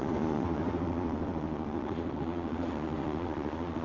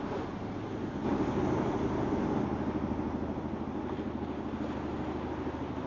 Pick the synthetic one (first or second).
first